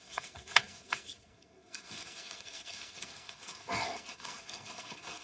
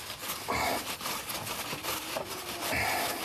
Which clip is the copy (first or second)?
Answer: first